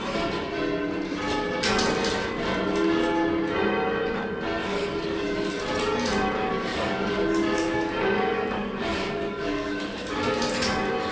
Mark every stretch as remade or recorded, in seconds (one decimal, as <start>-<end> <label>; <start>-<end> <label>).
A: 0.0-4.6 recorded; 4.6-5.5 remade; 5.5-6.5 recorded; 6.5-10.4 remade; 10.4-11.1 recorded